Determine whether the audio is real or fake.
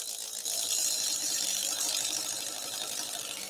real